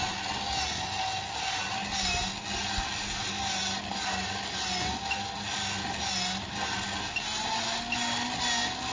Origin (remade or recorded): recorded